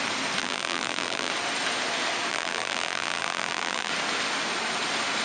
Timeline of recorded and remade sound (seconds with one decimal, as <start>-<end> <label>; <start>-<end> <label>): 0.0-0.4 recorded; 0.4-1.3 remade; 1.3-2.3 recorded; 2.3-3.9 remade; 3.9-5.2 recorded